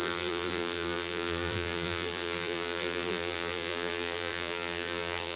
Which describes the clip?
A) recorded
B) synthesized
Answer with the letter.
B